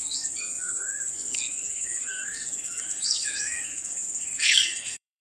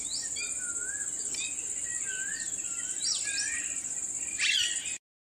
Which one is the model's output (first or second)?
first